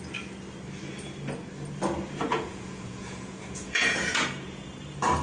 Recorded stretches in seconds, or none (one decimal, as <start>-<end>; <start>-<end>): 0.0-2.3; 4.6-5.2